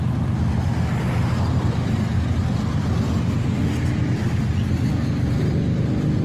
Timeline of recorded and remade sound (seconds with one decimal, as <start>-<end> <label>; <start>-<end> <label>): 0.0-6.2 recorded